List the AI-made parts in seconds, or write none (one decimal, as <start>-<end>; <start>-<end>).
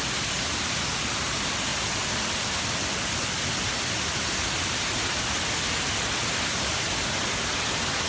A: none